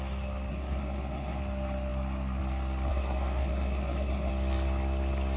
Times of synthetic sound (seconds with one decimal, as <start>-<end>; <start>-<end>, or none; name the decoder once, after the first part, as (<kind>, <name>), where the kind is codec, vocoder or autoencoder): 0.5-1.4 (codec, SNAC); 2.9-4.3

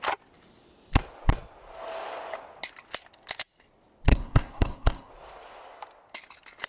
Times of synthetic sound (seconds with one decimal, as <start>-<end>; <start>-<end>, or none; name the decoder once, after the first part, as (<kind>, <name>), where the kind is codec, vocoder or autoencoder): 4.1-5.1 (codec, SNAC)